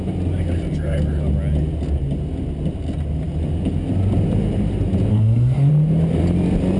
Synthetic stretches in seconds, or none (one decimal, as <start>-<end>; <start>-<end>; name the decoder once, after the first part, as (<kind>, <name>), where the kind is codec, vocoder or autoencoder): 5.1-5.7 (codec, SNAC)